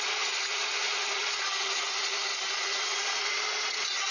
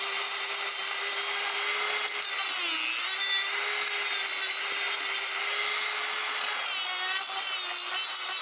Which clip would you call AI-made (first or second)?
first